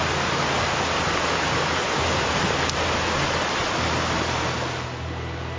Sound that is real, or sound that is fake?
real